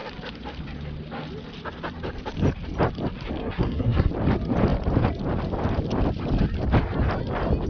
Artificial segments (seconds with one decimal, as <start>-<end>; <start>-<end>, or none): 3.4-4.1